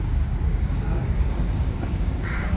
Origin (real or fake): fake